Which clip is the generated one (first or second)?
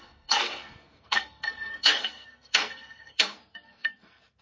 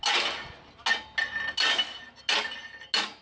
first